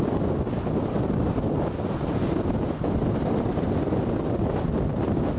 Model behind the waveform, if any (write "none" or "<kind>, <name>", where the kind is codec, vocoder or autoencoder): none